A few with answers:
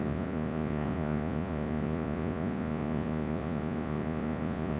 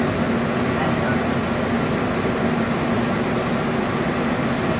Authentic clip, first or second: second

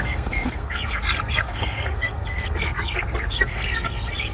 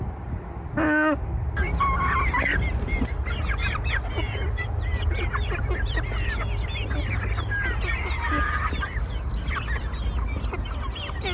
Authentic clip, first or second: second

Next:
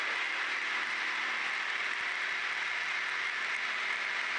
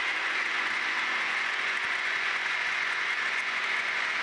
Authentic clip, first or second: first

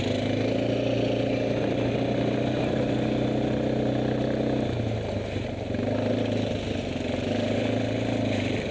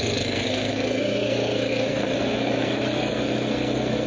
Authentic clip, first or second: first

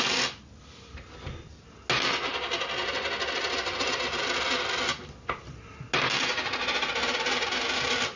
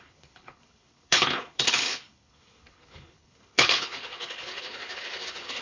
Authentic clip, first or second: first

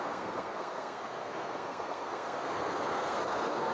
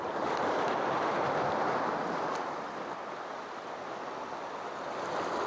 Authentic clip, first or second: second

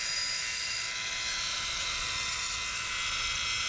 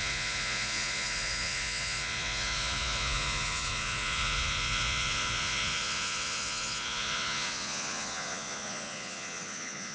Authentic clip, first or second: first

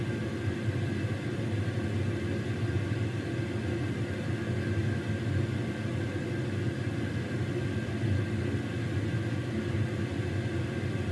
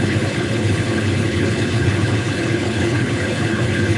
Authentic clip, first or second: first